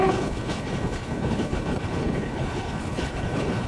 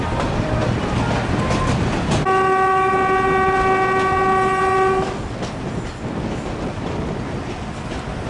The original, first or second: second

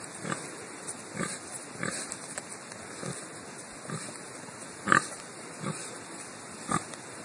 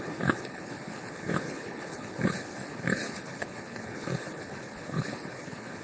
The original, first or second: first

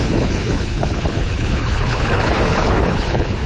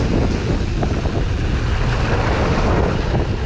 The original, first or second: second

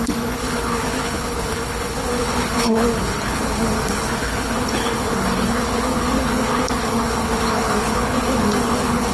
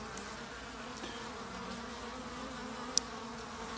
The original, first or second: second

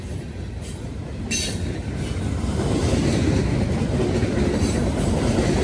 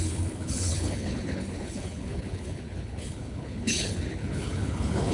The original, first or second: first